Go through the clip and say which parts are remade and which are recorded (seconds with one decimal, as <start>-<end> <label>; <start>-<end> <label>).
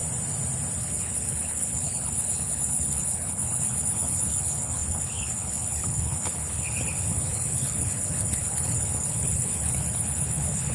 0.0-0.8 recorded; 0.8-10.7 remade